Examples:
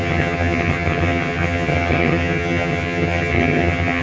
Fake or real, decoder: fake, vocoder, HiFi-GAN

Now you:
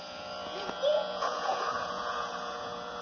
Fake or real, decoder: fake, vocoder, Vocos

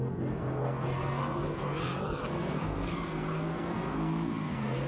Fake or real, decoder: fake, codec, SNAC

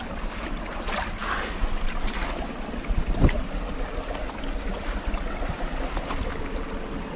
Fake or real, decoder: real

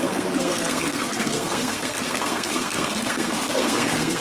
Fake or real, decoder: fake, codec, SNAC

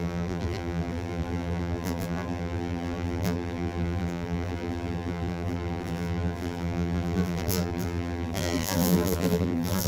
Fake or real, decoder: fake, vocoder, BigVGAN v2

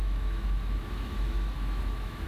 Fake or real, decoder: fake, autoencoder, DAC-VAE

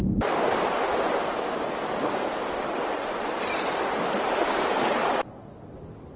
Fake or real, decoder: real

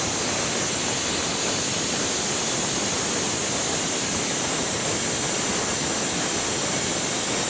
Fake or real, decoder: real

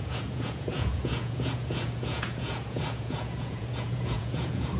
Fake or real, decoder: fake, vocoder, Vocos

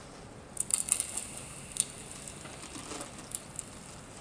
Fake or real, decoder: real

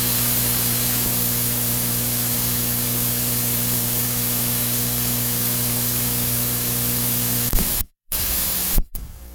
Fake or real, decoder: fake, codec, DAC